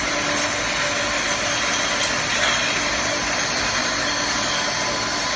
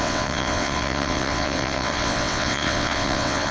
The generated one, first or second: second